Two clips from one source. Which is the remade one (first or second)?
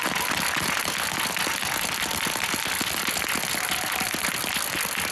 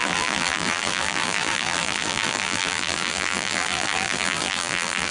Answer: second